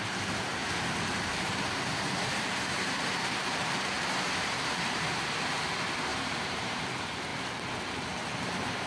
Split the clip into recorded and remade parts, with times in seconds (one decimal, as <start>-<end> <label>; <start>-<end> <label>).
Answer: 0.0-0.6 recorded; 0.6-5.2 remade; 5.2-6.1 recorded; 6.1-6.8 remade; 6.8-8.9 recorded